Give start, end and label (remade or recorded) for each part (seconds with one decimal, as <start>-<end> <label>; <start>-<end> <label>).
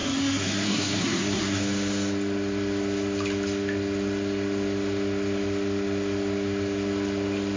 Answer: 0.0-1.6 remade; 1.6-7.6 recorded